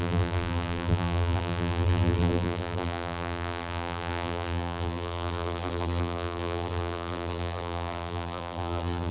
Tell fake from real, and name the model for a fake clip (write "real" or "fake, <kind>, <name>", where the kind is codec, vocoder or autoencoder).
fake, vocoder, BigVGAN v2